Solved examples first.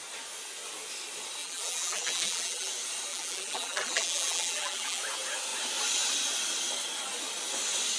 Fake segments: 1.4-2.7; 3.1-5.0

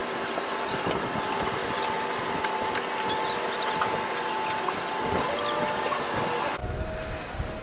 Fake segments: 0.0-2.4

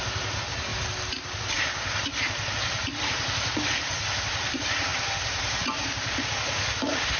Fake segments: 0.0-0.7; 1.4-7.2

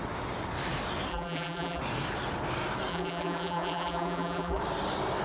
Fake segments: 1.1-1.8; 2.9-4.6